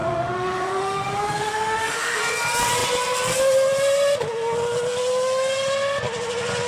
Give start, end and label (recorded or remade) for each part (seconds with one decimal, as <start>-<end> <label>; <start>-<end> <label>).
0.0-2.2 remade; 2.2-6.7 recorded